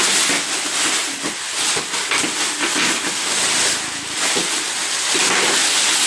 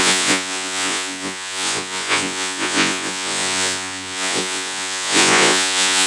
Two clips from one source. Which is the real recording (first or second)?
first